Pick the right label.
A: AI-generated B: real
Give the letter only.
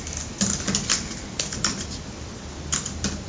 B